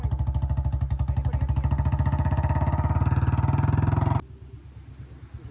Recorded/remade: recorded